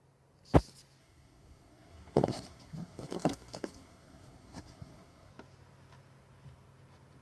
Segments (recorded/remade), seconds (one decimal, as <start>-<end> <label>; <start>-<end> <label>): 0.0-1.0 recorded; 1.0-5.3 remade; 5.3-7.2 recorded